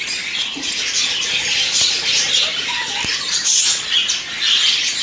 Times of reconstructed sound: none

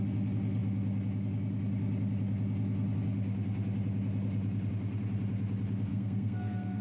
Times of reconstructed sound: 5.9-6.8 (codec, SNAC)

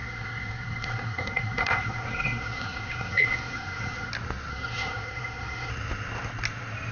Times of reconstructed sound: 0.0-4.1 (codec, SNAC); 4.5-5.7

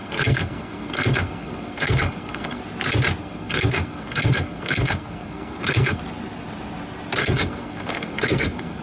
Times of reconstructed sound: 0.0-2.6 (codec, SNAC); 3.2-6.0; 7.2-8.8

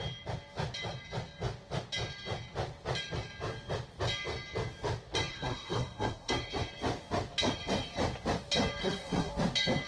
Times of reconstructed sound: 5.3-6.3 (codec, SNAC); 8.8-9.3